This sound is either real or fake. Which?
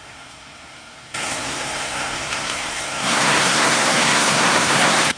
fake